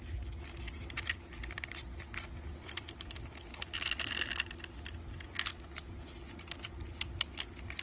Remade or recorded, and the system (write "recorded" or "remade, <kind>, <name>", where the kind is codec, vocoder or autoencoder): recorded